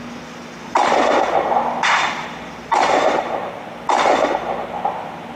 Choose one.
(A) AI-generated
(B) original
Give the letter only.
B